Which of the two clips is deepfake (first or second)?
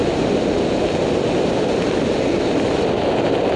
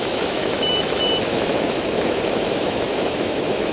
second